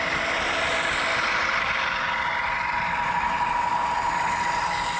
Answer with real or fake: real